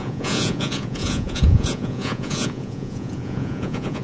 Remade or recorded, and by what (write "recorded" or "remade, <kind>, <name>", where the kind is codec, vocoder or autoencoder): remade, vocoder, Vocos